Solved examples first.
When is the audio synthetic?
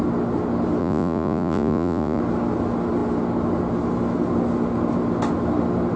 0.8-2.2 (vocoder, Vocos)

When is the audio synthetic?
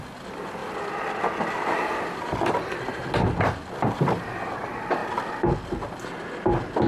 none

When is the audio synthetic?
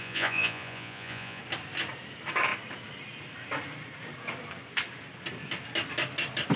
0.0-1.4 (vocoder, Vocos)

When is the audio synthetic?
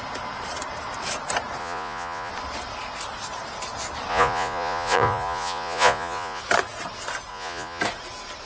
1.6-2.3 (vocoder, Vocos); 4.1-6.4; 7.3-7.8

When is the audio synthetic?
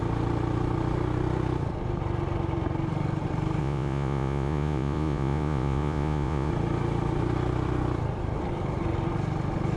3.6-6.5 (vocoder, Vocos)